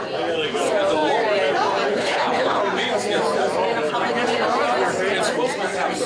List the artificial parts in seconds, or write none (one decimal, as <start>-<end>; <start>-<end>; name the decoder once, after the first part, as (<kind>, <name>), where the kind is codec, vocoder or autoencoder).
1.9-2.6 (codec, HILCodec)